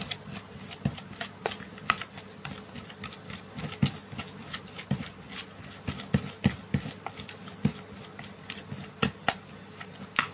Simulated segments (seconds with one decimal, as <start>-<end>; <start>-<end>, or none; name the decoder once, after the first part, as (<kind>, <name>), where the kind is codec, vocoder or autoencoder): none